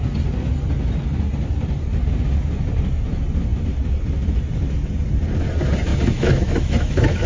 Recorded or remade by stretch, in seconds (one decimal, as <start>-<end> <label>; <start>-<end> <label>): 0.0-5.9 recorded; 5.9-7.3 remade